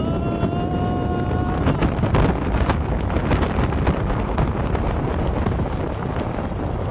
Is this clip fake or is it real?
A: real